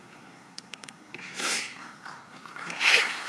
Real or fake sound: fake